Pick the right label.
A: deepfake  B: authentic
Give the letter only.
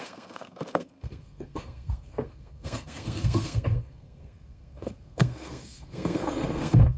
A